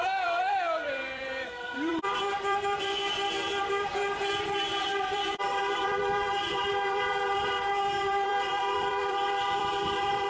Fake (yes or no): yes